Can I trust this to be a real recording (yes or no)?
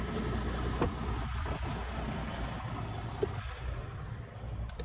yes